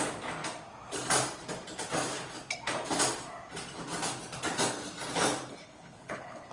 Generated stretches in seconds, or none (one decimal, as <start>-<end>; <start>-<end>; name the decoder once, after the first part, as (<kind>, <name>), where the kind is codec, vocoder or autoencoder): 5.5-6.5 (codec, HILCodec)